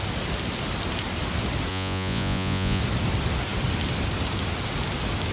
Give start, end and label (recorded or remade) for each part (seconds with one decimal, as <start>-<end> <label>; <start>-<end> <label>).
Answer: 0.0-1.7 recorded; 1.7-2.8 remade; 2.8-5.3 recorded